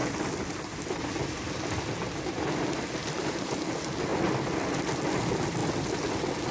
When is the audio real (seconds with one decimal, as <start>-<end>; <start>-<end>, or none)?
0.0-3.0; 3.6-6.5